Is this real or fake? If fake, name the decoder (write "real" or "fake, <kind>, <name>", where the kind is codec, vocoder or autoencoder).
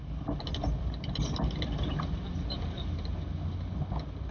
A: real